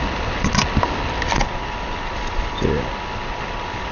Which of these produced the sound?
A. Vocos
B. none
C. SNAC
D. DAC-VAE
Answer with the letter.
B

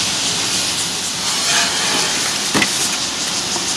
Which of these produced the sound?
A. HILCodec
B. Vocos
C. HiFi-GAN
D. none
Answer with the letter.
D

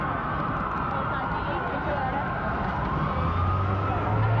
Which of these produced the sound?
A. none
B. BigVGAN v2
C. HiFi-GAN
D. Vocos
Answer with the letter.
A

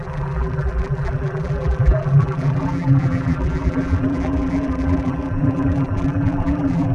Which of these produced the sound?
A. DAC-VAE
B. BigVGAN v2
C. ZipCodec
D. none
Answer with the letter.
B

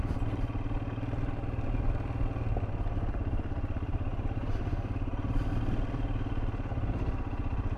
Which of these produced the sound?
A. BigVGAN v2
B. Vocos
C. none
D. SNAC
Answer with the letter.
C